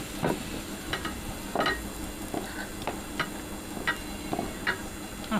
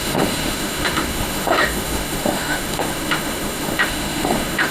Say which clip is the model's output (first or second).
second